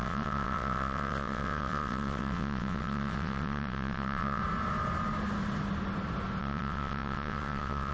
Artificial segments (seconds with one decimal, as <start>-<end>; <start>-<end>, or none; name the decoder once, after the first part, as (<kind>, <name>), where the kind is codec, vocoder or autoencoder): 0.0-4.4 (vocoder, WaveNeXt); 6.4-7.9